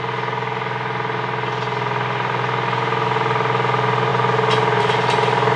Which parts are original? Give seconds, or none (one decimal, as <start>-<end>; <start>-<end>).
0.0-5.6